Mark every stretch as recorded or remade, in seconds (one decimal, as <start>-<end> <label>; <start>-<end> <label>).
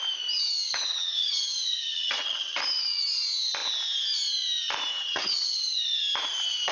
0.0-0.7 recorded; 0.7-2.6 remade; 2.6-4.9 recorded; 4.9-5.8 remade; 5.8-6.7 recorded